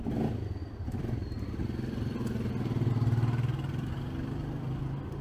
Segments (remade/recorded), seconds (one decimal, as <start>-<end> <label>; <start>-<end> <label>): 0.0-5.2 recorded